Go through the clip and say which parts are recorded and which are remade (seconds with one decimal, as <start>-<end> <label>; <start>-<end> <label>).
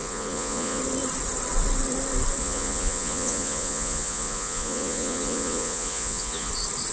0.0-0.8 remade; 0.8-2.4 recorded; 2.4-6.5 remade; 6.5-6.9 recorded